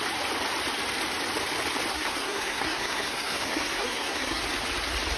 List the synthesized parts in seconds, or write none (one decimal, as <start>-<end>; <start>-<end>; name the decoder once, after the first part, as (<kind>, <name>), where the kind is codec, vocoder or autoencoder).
1.9-4.4 (codec, SNAC)

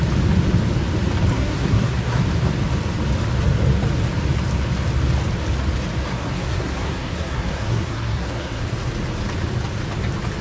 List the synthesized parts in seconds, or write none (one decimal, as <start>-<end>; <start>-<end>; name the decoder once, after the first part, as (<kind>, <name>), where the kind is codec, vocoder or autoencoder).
1.3-2.2 (codec, SNAC); 6.1-8.6